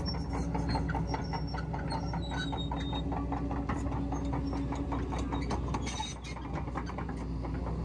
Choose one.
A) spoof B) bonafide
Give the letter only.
B